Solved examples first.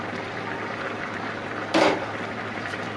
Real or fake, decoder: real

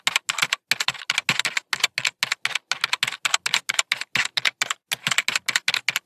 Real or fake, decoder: real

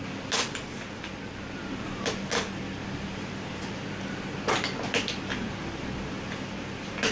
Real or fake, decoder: real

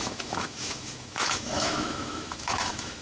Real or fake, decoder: fake, autoencoder, DAC-VAE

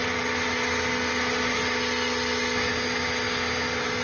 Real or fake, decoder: real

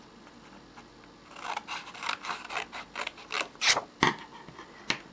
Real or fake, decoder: real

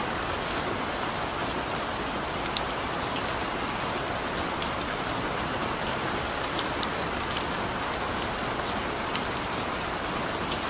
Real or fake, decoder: real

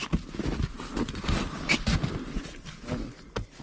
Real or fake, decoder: real